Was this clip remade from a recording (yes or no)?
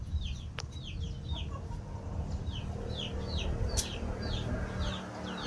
no